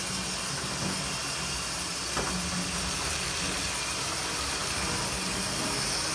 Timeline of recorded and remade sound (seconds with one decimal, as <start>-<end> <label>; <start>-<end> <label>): 0.0-6.1 recorded